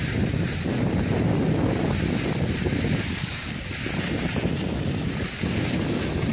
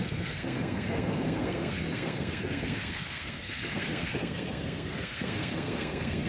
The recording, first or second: first